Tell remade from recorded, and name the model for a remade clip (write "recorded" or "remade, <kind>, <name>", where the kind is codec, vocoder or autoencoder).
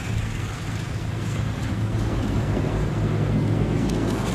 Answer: remade, codec, SNAC